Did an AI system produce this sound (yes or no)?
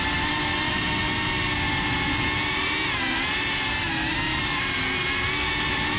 no